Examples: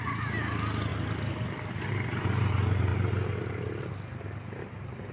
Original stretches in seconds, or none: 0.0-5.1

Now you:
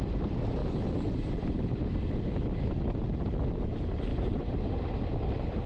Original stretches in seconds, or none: 0.0-4.1; 4.7-5.7

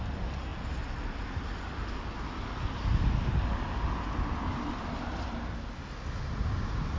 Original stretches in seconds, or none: 0.0-7.0

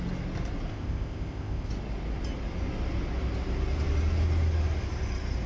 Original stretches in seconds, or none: 0.0-0.7; 1.7-5.5

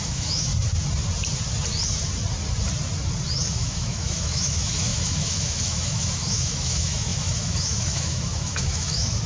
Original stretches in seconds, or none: 0.5-3.5

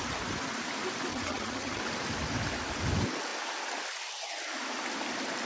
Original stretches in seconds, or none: 0.0-1.1; 1.8-5.5